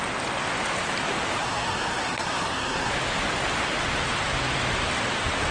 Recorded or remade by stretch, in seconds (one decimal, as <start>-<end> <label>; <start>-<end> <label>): 0.0-1.4 recorded; 1.4-2.9 remade; 2.9-5.5 recorded